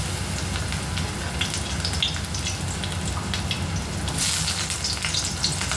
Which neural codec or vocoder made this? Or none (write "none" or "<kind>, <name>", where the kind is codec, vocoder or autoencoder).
none